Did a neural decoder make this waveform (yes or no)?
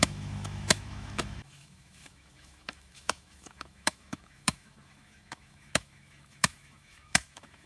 yes